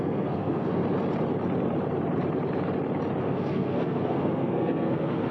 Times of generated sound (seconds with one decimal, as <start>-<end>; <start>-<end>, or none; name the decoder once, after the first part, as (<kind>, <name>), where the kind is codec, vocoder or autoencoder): 0.0-0.8 (codec, SNAC); 3.2-5.3